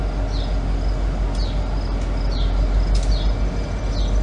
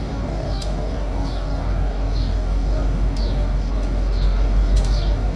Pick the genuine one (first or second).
first